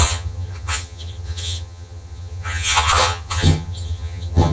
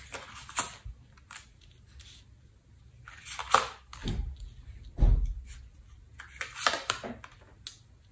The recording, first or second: second